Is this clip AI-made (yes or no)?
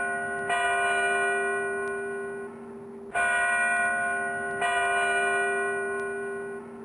no